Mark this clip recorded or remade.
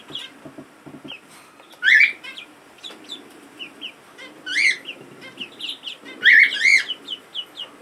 recorded